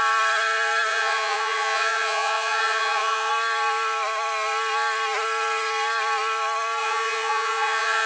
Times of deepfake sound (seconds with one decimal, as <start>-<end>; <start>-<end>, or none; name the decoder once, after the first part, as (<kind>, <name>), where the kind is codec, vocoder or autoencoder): 0.9-3.3 (vocoder, Vocos); 6.8-8.1